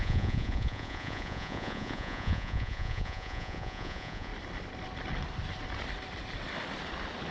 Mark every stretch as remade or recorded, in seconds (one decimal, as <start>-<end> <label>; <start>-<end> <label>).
0.0-4.3 remade; 4.3-7.3 recorded